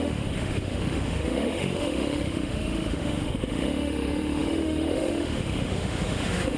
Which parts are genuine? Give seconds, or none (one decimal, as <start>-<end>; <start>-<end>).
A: none